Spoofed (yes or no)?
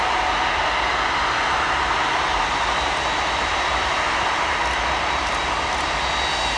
no